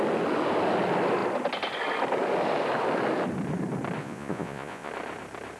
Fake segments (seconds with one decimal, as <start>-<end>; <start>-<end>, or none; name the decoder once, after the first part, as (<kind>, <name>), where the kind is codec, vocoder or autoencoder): 4.0-4.9 (vocoder, Vocos)